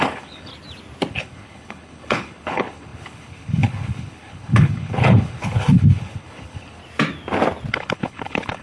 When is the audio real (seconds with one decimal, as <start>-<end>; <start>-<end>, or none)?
0.5-1.1; 6.8-7.7